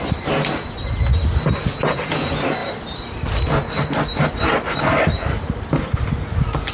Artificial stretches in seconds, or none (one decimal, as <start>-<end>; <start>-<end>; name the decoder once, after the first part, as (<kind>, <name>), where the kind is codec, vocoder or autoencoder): none